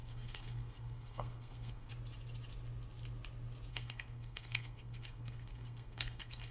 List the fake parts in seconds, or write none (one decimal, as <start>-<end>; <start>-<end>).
0.0-1.9; 3.7-6.5